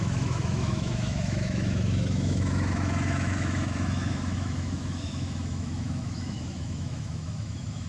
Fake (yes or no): yes